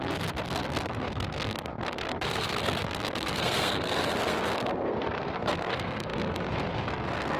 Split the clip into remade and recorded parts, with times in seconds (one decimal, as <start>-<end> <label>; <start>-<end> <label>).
0.0-7.4 remade